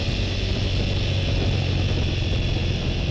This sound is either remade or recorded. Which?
recorded